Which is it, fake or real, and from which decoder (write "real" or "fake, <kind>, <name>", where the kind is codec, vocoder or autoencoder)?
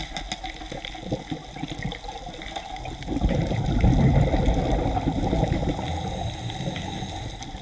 real